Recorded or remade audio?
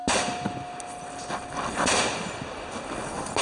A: recorded